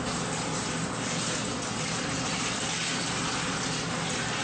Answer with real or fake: real